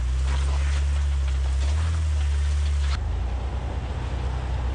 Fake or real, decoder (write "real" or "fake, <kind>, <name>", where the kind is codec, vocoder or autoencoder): real